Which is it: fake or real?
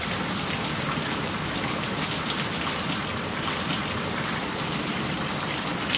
real